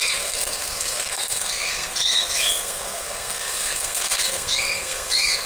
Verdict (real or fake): fake